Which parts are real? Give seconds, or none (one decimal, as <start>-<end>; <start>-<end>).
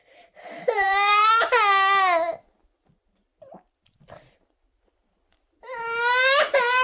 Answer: 1.3-6.8